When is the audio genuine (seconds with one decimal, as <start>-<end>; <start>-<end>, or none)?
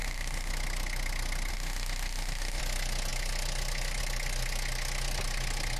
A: 0.5-1.5; 2.6-5.8